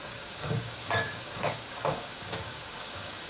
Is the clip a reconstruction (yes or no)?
yes